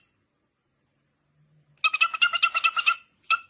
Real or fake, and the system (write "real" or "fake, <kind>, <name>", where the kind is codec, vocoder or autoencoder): real